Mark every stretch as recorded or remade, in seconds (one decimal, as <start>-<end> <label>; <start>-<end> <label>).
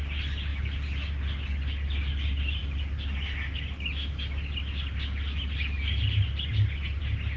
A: 0.0-7.4 recorded